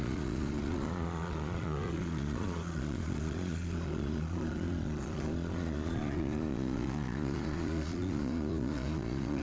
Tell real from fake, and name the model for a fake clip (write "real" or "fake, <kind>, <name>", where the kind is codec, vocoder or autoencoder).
fake, vocoder, Vocos